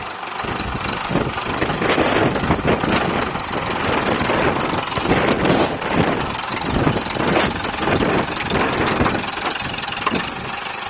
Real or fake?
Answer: real